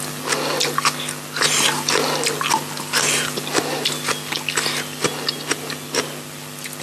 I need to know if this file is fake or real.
real